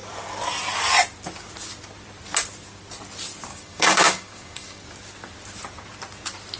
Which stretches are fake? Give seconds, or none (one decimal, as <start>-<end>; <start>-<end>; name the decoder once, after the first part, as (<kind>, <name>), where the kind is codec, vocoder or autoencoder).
3.5-4.8 (codec, DAC)